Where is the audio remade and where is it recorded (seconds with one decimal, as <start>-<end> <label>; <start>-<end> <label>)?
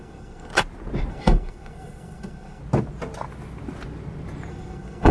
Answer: 0.0-0.5 remade; 0.5-1.1 recorded; 1.1-2.6 remade; 2.6-4.5 recorded; 4.5-5.1 remade